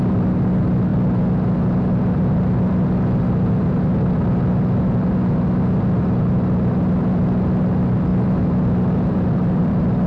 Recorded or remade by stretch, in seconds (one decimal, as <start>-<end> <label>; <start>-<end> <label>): 0.0-10.1 recorded